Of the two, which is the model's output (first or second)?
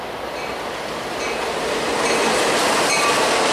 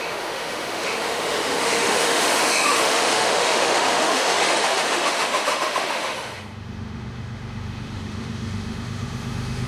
second